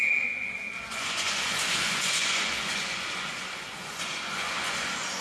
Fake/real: fake